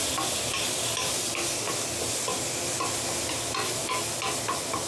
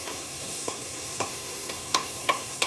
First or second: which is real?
first